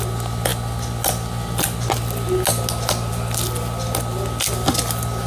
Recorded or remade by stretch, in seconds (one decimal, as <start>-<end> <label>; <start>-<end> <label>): 0.0-5.3 recorded